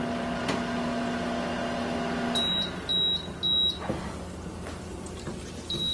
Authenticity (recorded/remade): recorded